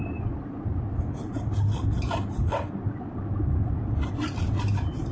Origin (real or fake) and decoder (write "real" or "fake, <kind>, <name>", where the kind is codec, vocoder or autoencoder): real